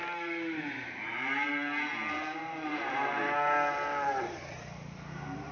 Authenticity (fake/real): fake